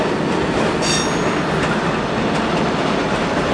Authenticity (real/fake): real